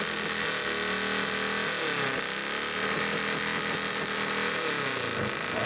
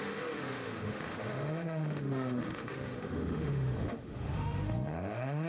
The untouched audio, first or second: first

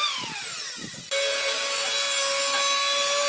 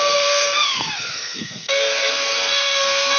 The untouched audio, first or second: first